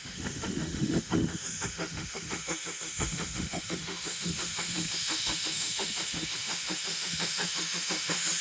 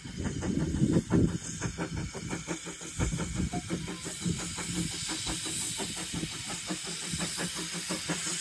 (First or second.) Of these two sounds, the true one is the second